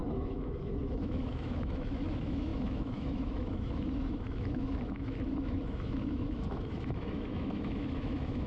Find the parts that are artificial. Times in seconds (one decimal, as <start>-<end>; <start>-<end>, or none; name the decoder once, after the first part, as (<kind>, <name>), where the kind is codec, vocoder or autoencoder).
0.0-8.5 (autoencoder, DAC-VAE)

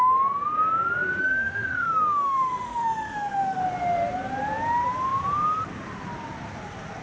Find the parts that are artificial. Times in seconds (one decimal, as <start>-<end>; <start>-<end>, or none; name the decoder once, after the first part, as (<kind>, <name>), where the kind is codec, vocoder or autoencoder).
1.2-3.6 (autoencoder, DAC-VAE)

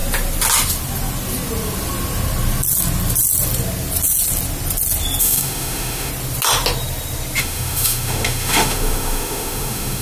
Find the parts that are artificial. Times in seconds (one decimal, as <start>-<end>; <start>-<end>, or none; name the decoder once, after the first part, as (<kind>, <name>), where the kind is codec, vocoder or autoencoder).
5.2-6.1 (autoencoder, DAC-VAE); 7.4-10.0

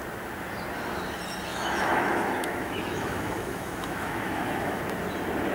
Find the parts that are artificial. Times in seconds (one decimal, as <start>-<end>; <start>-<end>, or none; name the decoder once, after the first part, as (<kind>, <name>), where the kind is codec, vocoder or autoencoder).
1.5-4.8 (autoencoder, DAC-VAE)

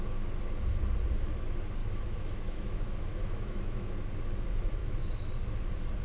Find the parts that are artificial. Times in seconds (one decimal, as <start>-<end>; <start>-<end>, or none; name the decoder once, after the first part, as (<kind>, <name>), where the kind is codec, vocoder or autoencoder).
1.8-4.1 (autoencoder, DAC-VAE); 4.8-5.3